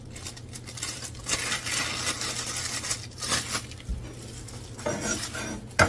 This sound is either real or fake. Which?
real